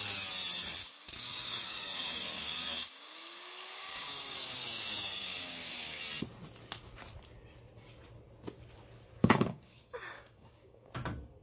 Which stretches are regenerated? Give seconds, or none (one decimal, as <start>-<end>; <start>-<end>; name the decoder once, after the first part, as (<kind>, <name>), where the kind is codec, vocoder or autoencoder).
0.8-6.0 (codec, DAC); 9.2-10.9